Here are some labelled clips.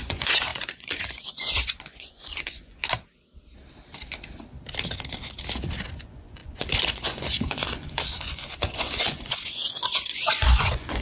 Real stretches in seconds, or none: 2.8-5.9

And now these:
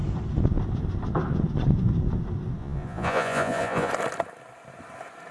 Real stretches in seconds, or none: 0.0-2.6; 3.9-5.3

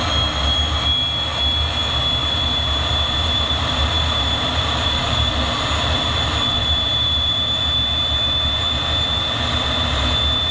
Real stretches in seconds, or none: 0.0-2.2; 5.3-6.6; 7.6-10.5